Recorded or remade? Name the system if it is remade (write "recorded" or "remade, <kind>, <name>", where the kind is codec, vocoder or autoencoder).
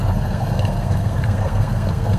remade, codec, SNAC